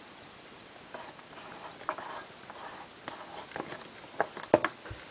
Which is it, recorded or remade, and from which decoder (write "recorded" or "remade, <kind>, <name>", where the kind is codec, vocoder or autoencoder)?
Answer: recorded